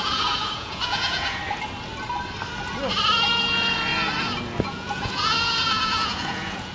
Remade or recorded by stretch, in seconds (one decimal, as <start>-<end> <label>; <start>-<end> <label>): 0.0-1.4 remade; 1.4-3.3 recorded; 3.3-3.9 remade; 3.9-4.6 recorded; 4.6-6.7 remade